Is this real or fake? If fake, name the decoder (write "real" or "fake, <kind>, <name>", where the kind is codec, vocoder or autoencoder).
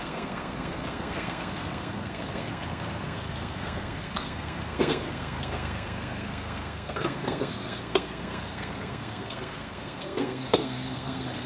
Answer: fake, codec, SNAC